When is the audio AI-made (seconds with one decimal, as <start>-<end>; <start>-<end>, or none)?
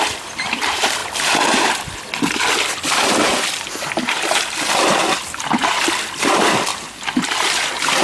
0.0-6.7